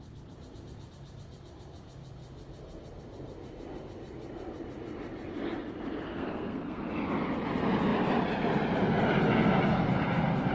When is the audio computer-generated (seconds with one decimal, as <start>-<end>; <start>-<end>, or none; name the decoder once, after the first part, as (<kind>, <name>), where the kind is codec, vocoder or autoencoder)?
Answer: 6.1-6.9 (codec, SNAC)